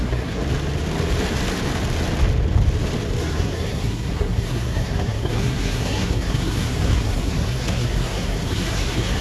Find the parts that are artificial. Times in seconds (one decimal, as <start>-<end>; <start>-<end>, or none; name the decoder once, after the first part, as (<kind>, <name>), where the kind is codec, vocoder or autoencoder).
0.0-0.4 (codec, SNAC); 3.2-9.2